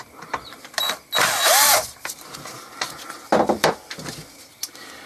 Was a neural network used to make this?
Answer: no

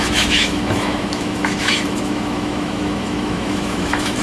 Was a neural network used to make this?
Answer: yes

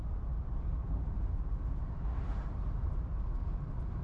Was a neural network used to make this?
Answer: no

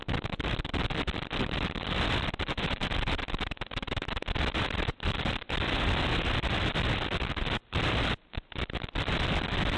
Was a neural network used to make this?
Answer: yes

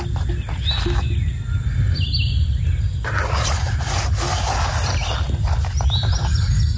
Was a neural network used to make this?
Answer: no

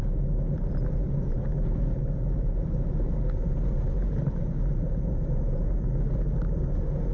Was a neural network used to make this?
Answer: no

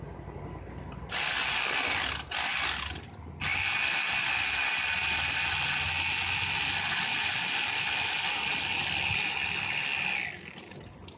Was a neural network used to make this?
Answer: no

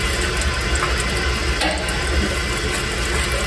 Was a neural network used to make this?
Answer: no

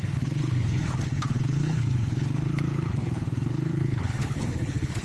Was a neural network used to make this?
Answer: yes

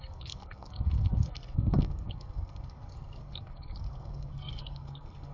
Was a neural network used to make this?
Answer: yes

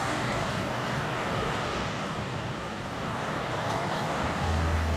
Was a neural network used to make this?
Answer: yes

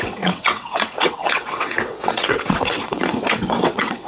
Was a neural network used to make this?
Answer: yes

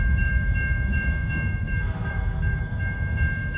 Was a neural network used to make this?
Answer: yes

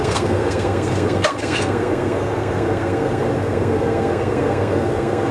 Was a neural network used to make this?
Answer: yes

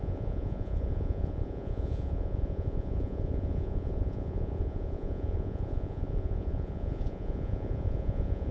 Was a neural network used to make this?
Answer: yes